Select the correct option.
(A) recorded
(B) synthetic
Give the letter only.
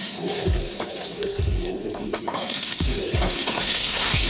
B